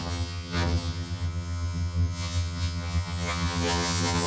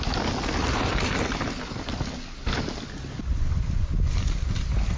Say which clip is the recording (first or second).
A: second